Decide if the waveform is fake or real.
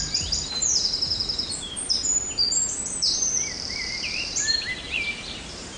fake